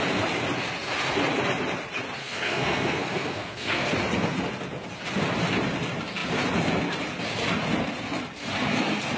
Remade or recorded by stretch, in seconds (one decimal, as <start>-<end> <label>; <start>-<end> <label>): 0.0-2.2 recorded; 2.2-3.9 remade; 3.9-9.2 recorded